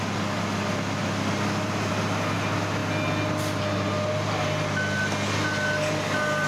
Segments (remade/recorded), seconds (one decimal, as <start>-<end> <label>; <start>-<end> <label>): 0.0-6.5 recorded